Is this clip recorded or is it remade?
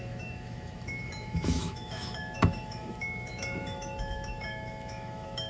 remade